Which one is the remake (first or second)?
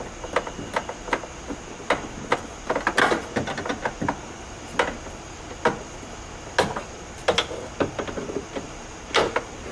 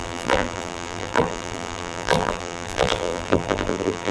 second